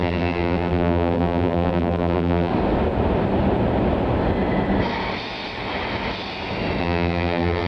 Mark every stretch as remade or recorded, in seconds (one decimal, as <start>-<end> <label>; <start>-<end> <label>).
0.0-2.5 remade; 2.5-6.8 recorded; 6.8-7.7 remade